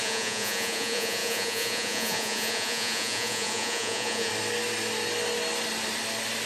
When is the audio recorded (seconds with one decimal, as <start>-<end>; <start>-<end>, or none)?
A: 4.3-6.5